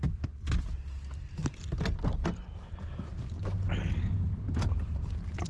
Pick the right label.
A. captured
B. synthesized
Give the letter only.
A